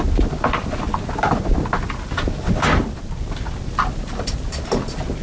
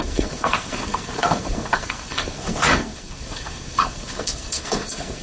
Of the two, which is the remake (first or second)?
second